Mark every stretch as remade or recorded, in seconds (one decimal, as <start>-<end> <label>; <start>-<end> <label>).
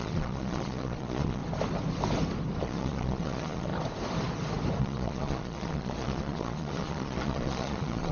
0.0-1.4 remade; 1.4-2.6 recorded; 2.6-3.7 remade; 3.7-4.8 recorded; 4.8-8.1 remade